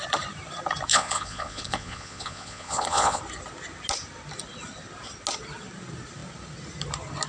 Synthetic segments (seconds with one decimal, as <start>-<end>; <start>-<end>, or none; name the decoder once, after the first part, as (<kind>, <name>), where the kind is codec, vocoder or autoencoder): 0.9-3.2 (vocoder, Vocos)